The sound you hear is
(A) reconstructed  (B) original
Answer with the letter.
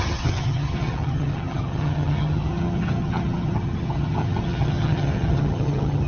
A